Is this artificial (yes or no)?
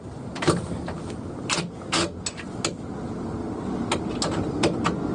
no